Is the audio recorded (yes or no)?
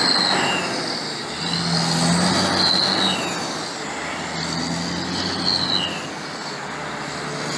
yes